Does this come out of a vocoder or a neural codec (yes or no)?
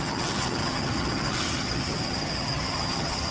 yes